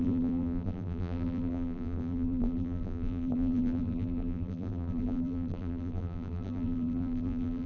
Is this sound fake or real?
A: fake